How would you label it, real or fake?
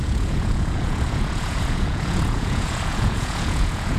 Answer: fake